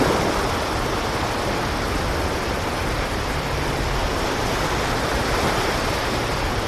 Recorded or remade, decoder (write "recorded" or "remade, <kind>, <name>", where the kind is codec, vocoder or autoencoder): recorded